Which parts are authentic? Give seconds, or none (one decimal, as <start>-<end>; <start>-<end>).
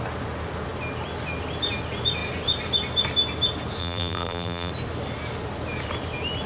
0.0-3.8; 4.7-6.5